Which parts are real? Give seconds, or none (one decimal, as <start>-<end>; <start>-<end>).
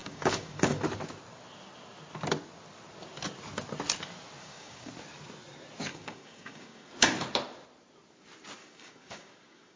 0.8-4.4; 4.9-5.9; 6.9-8.6